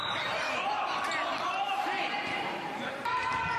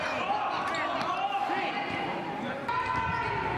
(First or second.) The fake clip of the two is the first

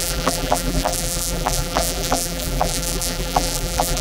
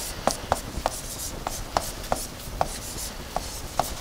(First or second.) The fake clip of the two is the first